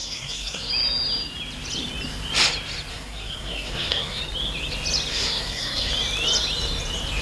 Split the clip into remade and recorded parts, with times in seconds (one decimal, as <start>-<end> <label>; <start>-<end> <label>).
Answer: 0.0-0.7 remade; 0.7-2.9 recorded; 2.9-4.2 remade; 4.2-5.1 recorded; 5.1-5.9 remade; 5.9-7.2 recorded